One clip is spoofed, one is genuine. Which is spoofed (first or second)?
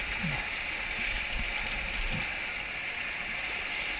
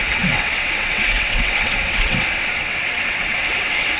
second